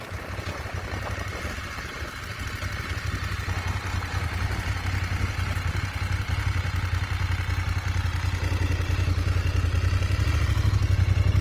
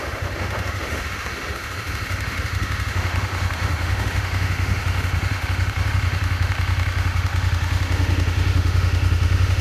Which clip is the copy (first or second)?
second